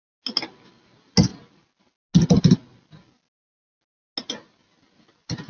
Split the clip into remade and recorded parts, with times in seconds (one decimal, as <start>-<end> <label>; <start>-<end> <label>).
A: 0.0-5.5 recorded